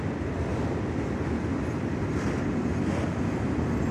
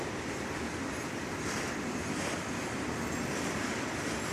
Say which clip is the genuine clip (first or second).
first